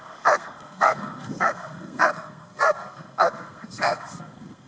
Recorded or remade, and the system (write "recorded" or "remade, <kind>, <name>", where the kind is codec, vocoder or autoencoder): remade, codec, SNAC